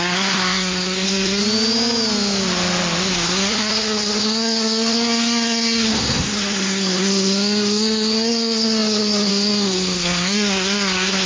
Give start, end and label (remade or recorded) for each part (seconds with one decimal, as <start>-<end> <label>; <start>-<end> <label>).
0.0-1.4 remade; 1.4-3.1 recorded; 3.1-11.3 remade